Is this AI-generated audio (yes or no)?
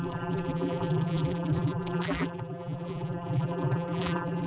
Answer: yes